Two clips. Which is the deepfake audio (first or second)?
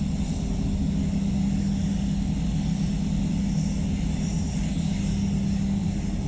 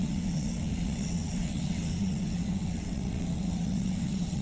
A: second